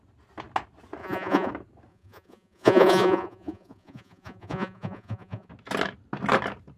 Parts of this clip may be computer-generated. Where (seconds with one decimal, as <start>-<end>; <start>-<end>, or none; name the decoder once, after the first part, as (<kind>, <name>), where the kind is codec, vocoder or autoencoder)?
1.0-1.5 (vocoder, Vocos); 1.9-5.5